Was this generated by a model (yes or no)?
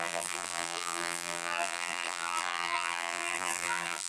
yes